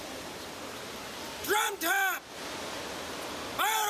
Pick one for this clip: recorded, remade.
recorded